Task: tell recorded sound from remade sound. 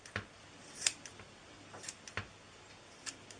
recorded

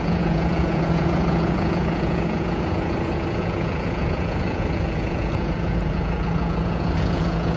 remade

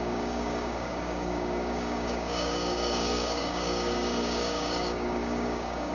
remade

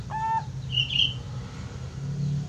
recorded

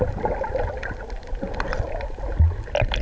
recorded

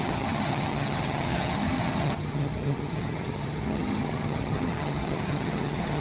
remade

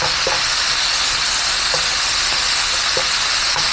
recorded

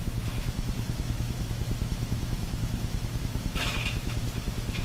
remade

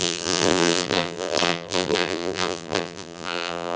remade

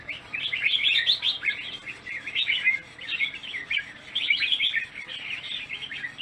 remade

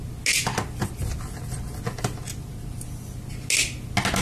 recorded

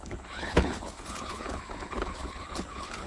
remade